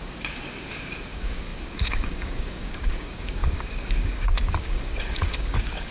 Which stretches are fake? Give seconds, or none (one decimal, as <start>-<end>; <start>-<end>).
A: 0.0-5.9